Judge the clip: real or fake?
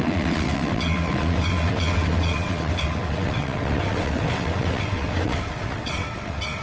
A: fake